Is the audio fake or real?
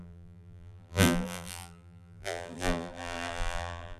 fake